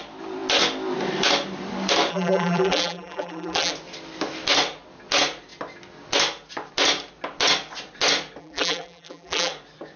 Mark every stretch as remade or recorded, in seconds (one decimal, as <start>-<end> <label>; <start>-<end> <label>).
0.0-2.1 recorded; 2.1-3.7 remade; 3.7-8.4 recorded; 8.4-9.5 remade; 9.5-10.0 recorded